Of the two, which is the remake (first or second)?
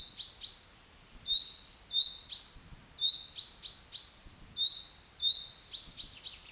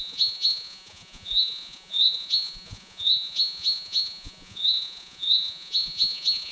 second